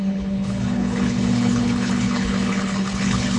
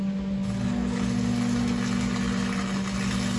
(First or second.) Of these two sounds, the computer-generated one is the first